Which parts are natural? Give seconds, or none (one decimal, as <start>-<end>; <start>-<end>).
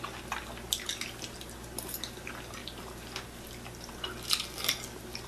0.0-5.3